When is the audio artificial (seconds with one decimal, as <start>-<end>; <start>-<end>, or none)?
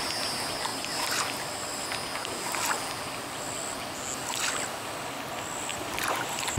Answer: 5.7-6.6